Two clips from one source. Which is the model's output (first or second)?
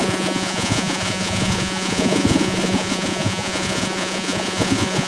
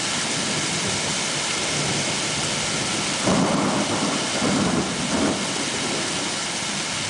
first